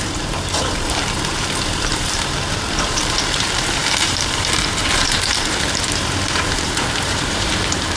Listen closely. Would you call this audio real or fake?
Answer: fake